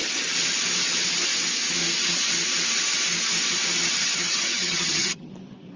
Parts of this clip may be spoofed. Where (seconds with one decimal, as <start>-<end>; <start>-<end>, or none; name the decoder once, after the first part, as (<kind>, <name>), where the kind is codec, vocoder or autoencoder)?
4.0-5.3 (vocoder, HiFi-GAN)